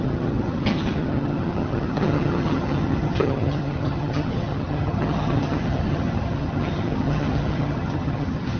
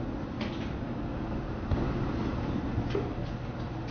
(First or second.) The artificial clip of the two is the first